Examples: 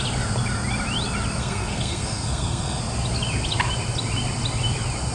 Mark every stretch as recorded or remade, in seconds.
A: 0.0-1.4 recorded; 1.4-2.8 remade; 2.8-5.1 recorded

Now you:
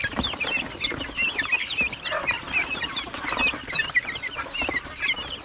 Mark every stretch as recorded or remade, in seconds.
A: 0.0-5.4 recorded

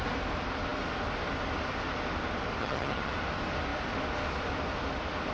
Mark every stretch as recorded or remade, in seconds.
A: 0.0-2.6 recorded; 2.6-3.1 remade; 3.1-5.3 recorded

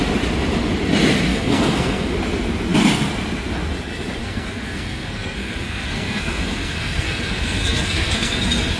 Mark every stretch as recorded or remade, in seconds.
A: 0.0-1.3 recorded; 1.3-2.1 remade; 2.1-4.2 recorded; 4.2-8.4 remade; 8.4-8.8 recorded

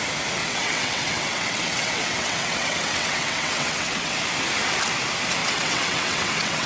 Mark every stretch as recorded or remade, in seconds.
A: 0.0-0.4 recorded; 0.4-4.1 remade; 4.1-5.4 recorded; 5.4-6.7 remade